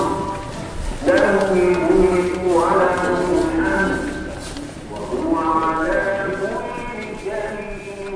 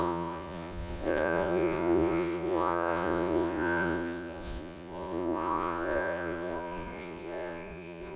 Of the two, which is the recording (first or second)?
first